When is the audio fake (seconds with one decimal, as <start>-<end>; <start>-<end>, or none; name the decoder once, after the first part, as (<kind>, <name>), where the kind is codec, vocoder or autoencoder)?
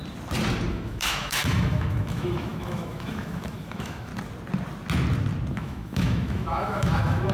0.7-4.1 (autoencoder, DAC-VAE); 5.5-7.3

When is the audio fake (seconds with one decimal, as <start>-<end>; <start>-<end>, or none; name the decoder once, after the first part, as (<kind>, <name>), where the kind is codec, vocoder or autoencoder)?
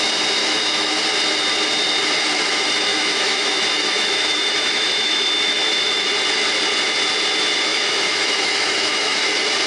0.4-1.0 (autoencoder, DAC-VAE); 2.9-6.1; 7.7-9.2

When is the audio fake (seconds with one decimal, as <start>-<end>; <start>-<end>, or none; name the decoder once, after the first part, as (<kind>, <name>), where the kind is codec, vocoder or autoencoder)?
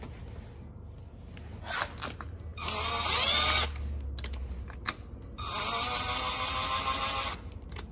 none